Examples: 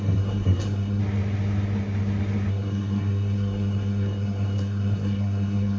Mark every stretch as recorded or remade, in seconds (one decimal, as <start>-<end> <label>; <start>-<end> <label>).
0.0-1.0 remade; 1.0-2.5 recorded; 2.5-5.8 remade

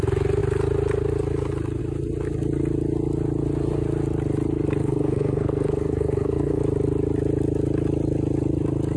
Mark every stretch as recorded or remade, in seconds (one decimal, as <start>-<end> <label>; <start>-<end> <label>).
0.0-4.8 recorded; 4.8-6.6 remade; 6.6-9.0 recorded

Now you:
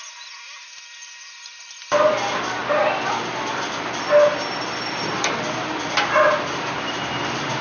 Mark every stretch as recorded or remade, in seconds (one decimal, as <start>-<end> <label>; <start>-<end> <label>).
0.0-7.6 recorded